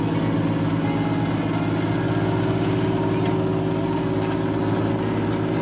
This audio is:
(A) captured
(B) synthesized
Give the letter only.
A